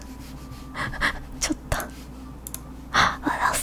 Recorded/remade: recorded